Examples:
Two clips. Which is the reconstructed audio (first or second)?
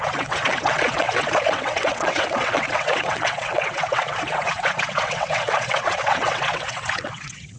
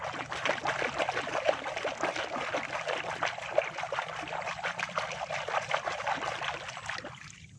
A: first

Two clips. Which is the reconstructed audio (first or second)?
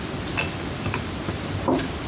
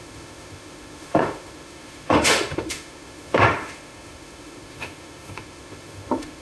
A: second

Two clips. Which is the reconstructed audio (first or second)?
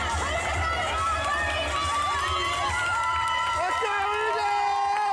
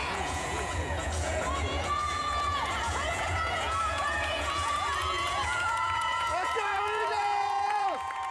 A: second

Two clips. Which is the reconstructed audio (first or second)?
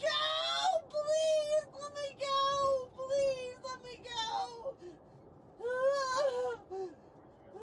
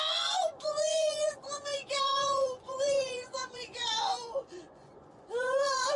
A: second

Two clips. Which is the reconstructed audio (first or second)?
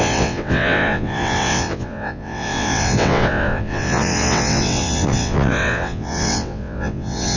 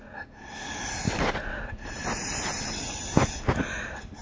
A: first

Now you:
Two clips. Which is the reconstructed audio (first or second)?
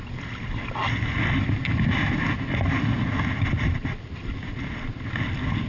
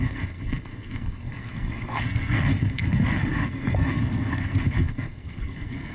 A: second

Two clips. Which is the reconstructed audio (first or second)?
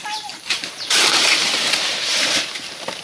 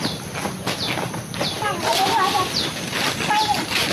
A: first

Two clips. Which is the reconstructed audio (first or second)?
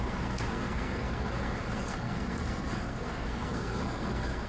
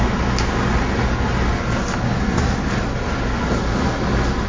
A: first